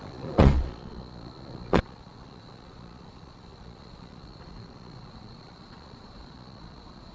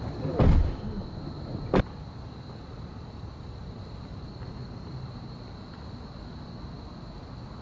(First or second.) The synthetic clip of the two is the first